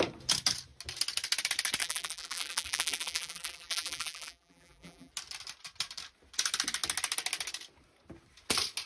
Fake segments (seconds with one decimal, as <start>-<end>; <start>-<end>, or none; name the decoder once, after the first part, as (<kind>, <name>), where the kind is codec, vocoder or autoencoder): 1.8-5.1 (vocoder, BigVGAN v2)